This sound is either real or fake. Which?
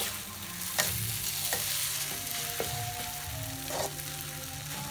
real